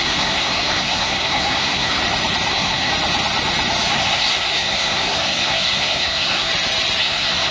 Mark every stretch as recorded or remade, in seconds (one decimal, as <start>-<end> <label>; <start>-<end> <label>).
0.0-2.0 remade; 2.0-2.5 recorded; 2.5-2.9 remade; 2.9-3.9 recorded; 3.9-6.5 remade; 6.5-7.0 recorded; 7.0-7.5 remade